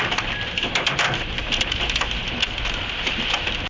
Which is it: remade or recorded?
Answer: recorded